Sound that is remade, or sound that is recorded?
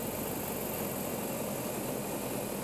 recorded